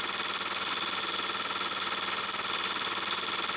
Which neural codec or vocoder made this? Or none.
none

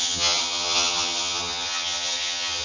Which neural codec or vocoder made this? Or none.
vocoder, HiFi-GAN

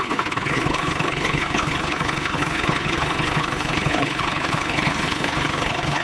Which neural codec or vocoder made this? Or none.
codec, HILCodec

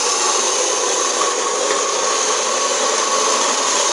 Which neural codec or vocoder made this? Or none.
none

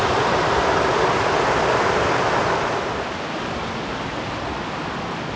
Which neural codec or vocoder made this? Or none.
none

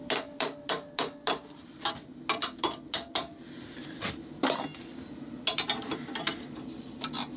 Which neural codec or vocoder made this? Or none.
none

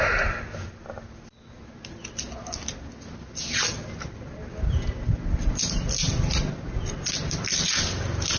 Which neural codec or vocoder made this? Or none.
none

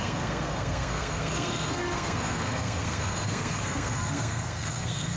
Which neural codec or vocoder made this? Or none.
codec, SNAC